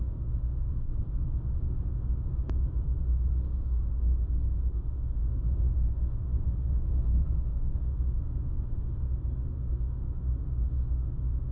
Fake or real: fake